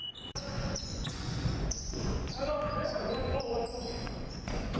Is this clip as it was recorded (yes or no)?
no